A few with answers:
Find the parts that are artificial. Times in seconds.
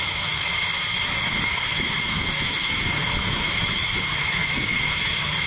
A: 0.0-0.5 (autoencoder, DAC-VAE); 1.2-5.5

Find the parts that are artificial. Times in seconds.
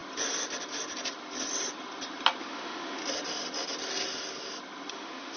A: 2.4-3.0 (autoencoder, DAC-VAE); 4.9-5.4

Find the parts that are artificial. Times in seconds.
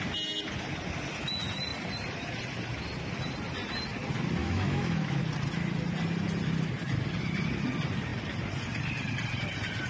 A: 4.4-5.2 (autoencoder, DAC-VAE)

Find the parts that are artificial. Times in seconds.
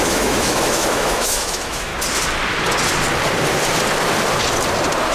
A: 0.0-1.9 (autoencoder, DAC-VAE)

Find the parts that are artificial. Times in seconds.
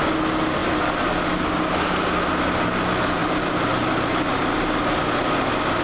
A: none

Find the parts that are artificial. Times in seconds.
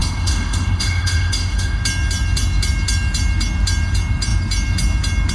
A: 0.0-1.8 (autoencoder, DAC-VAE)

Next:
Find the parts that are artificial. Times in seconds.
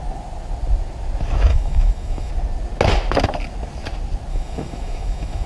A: 1.5-2.3 (autoencoder, DAC-VAE); 4.3-5.5